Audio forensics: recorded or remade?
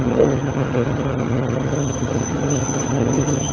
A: remade